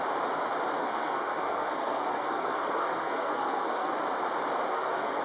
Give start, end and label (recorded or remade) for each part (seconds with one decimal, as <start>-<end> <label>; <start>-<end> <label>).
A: 0.0-0.8 recorded; 0.8-3.9 remade; 3.9-4.7 recorded; 4.7-5.2 remade